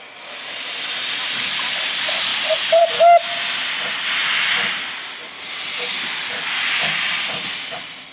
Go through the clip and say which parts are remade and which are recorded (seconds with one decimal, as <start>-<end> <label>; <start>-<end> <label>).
0.0-8.1 recorded